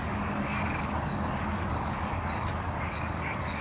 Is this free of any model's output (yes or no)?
no